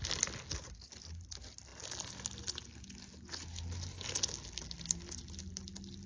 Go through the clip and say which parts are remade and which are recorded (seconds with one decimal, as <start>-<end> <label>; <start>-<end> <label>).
0.0-6.1 recorded